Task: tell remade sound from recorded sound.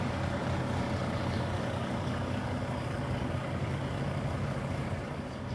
remade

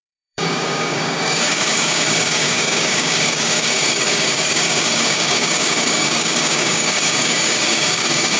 remade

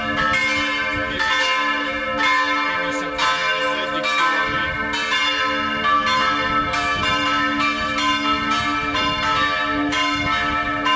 recorded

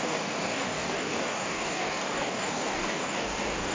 remade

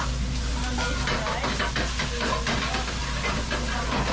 recorded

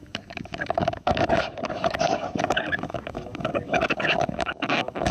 remade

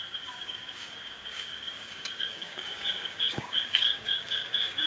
remade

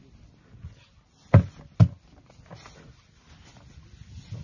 recorded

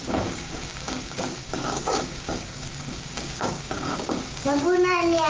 remade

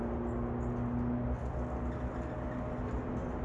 recorded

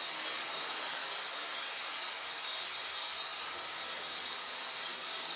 remade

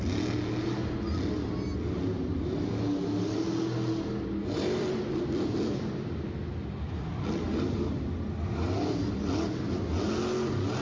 recorded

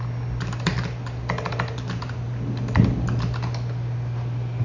recorded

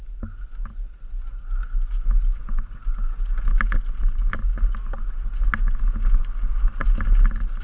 recorded